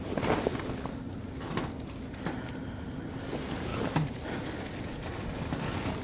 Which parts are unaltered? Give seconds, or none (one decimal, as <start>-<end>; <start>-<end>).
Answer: 0.0-6.0

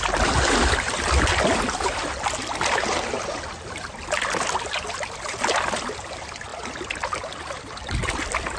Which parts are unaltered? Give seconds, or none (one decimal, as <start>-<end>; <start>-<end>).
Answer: 0.0-8.6

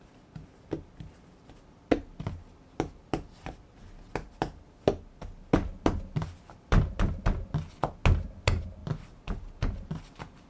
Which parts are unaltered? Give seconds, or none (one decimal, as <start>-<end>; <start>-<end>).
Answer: 0.0-10.5

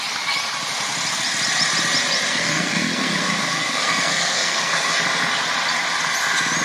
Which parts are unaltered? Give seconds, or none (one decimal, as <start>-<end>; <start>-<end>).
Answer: 0.0-2.3; 5.0-6.6

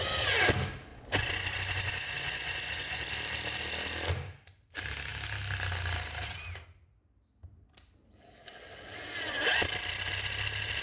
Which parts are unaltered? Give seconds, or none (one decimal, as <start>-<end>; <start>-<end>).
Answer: 0.0-0.9; 3.1-10.8

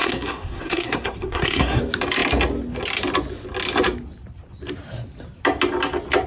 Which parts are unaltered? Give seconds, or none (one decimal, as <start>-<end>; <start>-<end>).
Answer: 1.8-6.3